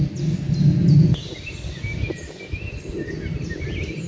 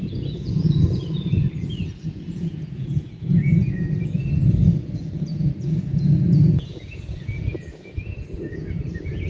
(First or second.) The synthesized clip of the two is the second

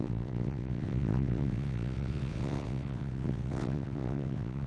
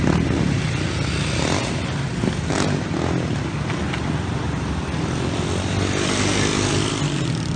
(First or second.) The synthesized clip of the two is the first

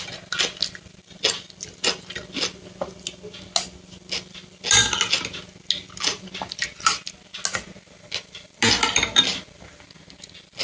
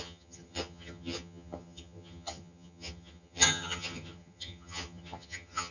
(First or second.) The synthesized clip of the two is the second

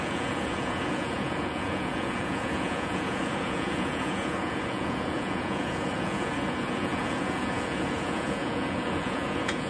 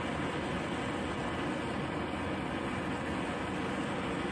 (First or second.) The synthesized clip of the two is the first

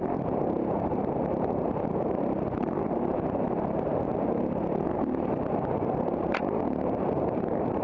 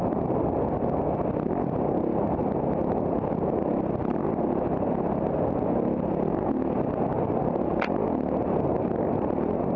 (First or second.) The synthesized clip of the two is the first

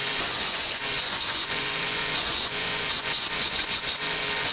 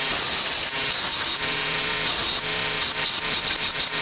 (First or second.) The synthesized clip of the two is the first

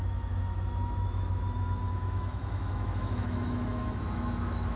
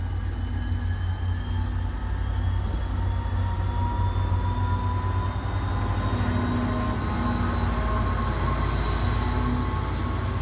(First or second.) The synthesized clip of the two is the first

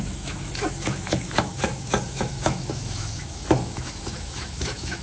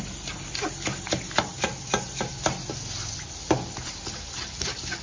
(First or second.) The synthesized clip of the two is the first